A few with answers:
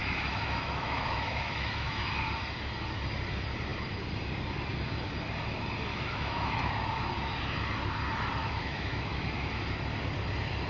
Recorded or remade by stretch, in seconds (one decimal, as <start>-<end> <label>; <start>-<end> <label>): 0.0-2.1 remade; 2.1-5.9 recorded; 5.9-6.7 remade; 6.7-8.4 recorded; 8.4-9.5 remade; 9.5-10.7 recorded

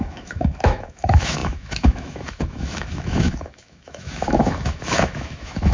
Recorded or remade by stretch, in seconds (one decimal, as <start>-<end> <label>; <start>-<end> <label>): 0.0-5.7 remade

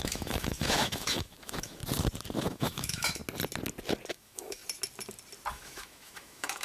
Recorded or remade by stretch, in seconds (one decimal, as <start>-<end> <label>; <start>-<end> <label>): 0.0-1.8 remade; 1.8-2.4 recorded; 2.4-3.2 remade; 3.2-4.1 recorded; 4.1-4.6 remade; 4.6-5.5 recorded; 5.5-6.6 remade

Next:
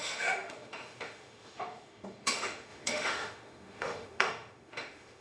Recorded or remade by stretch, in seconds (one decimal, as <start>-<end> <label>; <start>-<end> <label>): 0.0-5.2 remade

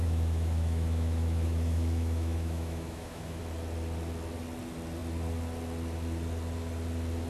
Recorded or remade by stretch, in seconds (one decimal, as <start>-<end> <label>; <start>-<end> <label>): 0.0-3.4 remade; 3.4-7.3 recorded